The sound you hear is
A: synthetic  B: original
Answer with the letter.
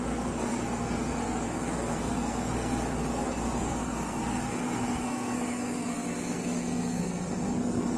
A